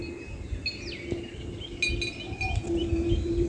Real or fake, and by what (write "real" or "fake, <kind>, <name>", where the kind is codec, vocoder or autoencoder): real